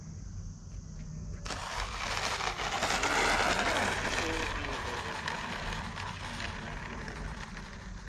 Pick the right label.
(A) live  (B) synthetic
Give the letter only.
A